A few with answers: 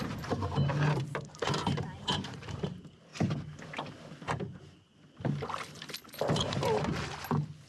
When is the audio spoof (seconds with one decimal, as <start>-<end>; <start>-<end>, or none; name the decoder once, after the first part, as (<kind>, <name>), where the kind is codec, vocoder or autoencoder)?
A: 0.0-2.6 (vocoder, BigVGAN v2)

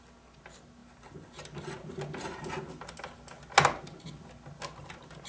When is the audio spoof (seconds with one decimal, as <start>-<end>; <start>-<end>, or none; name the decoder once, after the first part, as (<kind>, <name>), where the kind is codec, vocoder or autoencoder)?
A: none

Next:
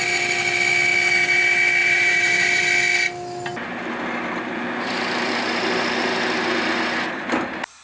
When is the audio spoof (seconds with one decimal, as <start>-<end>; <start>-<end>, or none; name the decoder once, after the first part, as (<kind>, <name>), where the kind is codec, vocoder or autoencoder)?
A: 1.8-2.6 (vocoder, BigVGAN v2)

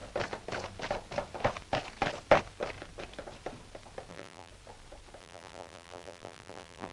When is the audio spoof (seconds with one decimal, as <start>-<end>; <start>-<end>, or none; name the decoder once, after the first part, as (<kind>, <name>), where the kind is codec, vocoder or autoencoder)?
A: 4.1-4.5 (vocoder, BigVGAN v2); 5.2-6.9

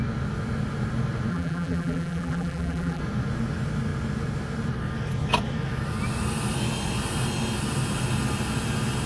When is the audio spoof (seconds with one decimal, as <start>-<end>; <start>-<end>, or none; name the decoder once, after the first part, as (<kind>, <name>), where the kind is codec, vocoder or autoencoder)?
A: 1.3-3.0 (vocoder, BigVGAN v2)